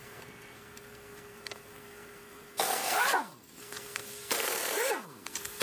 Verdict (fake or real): fake